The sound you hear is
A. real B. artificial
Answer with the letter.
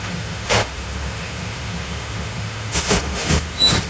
B